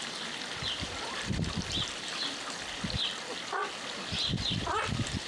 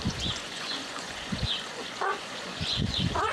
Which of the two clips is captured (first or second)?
first